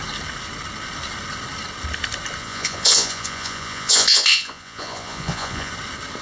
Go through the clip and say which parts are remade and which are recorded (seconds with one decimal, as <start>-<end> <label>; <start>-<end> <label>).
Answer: 0.0-2.4 recorded; 2.4-5.7 remade; 5.7-6.2 recorded